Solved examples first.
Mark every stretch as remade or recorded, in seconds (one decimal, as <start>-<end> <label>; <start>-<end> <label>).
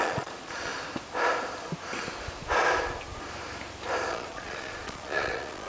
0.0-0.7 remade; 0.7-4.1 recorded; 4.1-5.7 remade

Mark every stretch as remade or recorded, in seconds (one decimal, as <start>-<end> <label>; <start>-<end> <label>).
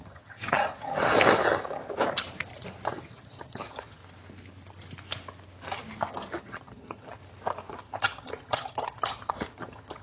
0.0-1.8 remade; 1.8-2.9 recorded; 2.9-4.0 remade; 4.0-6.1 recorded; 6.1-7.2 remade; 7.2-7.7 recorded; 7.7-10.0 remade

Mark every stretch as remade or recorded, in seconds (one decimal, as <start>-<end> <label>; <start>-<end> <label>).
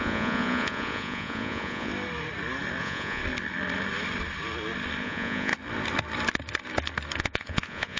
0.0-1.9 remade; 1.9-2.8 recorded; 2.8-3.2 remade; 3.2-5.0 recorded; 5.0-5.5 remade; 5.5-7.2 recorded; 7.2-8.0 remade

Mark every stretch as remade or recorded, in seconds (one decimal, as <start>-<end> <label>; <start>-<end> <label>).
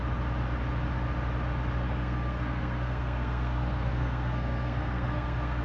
0.0-1.8 recorded; 1.8-5.6 remade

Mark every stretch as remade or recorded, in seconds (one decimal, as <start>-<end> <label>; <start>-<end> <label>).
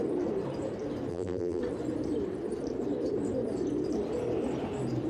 0.0-1.1 recorded; 1.1-1.6 remade; 1.6-5.1 recorded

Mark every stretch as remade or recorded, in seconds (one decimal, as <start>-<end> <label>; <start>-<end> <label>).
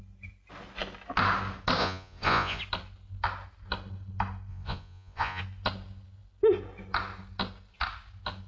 0.0-1.8 recorded; 1.8-2.6 remade; 2.6-4.5 recorded; 4.5-5.4 remade; 5.4-8.5 recorded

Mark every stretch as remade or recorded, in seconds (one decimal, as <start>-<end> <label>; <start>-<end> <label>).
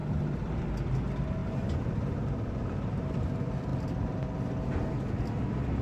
0.0-0.6 remade; 0.6-1.4 recorded; 1.4-3.3 remade; 3.3-5.8 recorded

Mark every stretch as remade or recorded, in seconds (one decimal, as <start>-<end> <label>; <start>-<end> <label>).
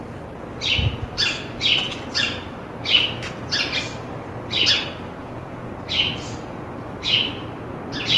0.0-5.2 recorded; 5.2-5.7 remade; 5.7-8.2 recorded